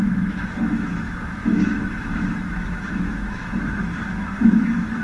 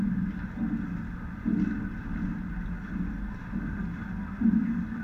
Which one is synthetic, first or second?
first